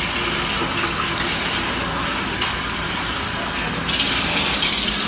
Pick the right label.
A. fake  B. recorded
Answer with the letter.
B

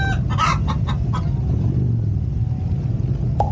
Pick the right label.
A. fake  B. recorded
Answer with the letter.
B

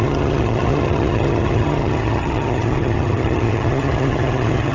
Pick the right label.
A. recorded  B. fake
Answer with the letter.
B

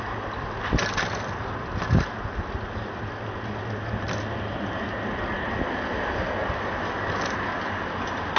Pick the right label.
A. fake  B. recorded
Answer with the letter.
B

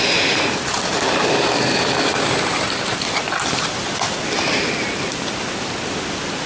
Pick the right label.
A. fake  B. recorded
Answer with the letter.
B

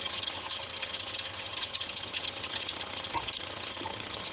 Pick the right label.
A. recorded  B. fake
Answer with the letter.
B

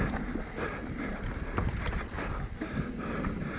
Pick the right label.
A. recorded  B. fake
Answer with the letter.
A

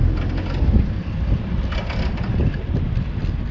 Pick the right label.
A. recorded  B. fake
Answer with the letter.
A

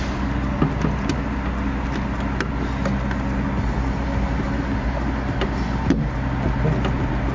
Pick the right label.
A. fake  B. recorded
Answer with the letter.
B